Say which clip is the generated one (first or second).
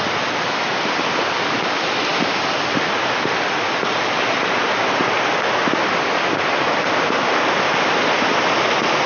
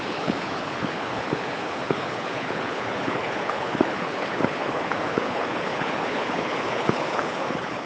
second